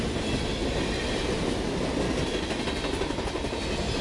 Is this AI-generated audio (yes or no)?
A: no